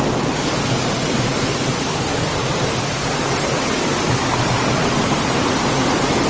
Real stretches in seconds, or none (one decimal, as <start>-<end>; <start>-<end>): 0.0-6.3